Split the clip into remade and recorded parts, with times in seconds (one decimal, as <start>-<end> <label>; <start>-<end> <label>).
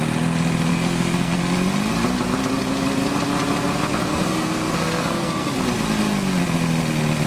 0.0-0.7 recorded; 0.7-1.4 remade; 1.4-4.1 recorded; 4.1-5.5 remade; 5.5-7.3 recorded